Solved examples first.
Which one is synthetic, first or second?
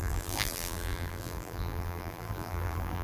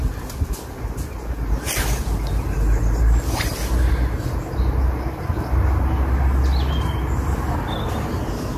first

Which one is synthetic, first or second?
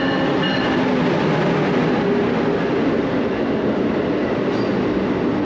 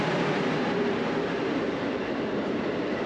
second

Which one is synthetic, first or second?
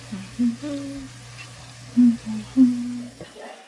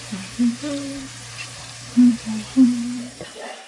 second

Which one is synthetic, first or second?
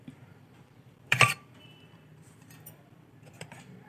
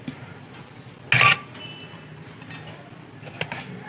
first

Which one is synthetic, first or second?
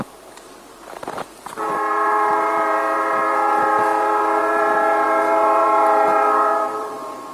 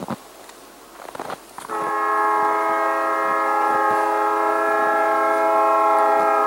first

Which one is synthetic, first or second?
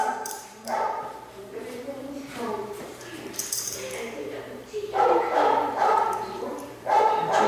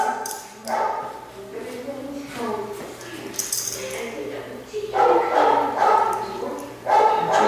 first